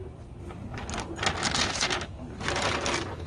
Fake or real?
real